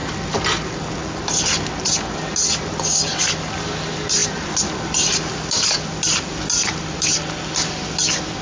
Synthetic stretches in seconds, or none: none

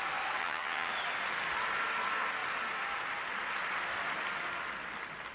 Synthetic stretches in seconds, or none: 0.4-0.9 (vocoder, HiFi-GAN)

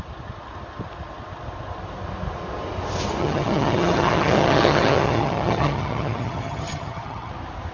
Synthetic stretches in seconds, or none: 3.2-7.3 (vocoder, HiFi-GAN)

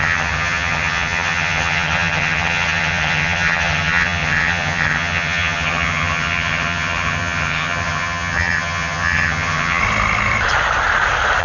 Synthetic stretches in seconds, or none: 0.0-9.8 (vocoder, HiFi-GAN)

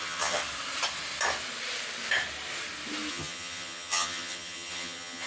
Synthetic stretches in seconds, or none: 0.0-0.4 (vocoder, HiFi-GAN); 3.1-5.3

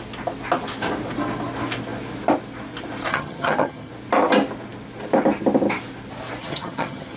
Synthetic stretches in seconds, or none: 3.1-3.9 (vocoder, HiFi-GAN); 6.4-7.2